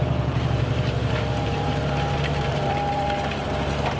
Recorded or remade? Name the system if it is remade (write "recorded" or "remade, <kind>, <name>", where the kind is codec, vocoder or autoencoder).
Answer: remade, vocoder, BigVGAN v2